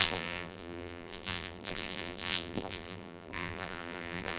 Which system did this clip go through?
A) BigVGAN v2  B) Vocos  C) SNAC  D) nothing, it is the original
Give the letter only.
A